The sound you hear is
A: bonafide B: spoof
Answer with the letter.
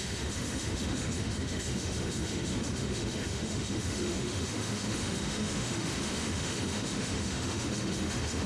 B